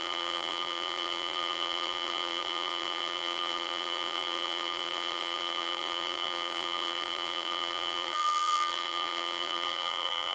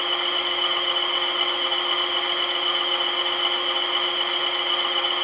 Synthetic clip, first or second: first